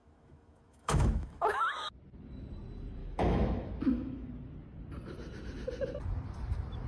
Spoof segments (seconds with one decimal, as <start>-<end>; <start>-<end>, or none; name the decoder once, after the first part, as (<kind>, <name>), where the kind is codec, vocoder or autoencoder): 0.0-1.6 (autoencoder, DAC-VAE); 3.0-4.3